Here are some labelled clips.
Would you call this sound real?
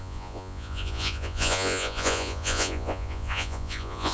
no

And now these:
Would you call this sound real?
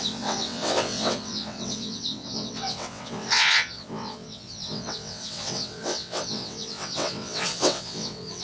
no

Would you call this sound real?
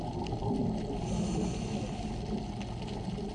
yes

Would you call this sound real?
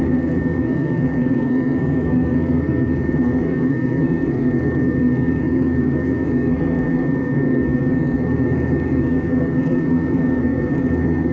no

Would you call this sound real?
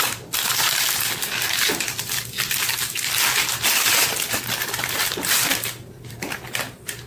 yes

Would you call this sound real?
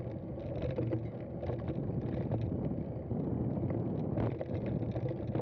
yes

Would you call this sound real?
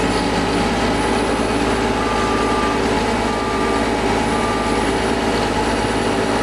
yes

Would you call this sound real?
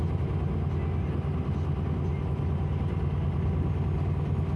yes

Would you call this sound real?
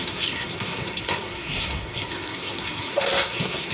no